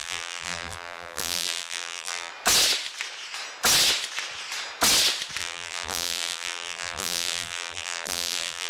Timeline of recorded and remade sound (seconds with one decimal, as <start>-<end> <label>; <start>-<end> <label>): 0.0-2.3 remade; 2.3-5.4 recorded; 5.4-8.7 remade